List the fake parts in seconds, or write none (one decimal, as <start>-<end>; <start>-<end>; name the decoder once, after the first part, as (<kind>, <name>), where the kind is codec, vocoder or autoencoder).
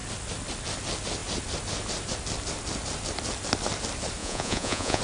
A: 4.2-5.0 (vocoder, Vocos)